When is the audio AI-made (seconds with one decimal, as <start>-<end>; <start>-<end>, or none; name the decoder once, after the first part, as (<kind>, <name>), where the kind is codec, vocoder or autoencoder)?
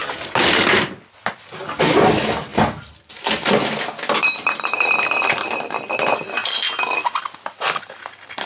2.5-5.6 (vocoder, BigVGAN v2); 6.4-7.2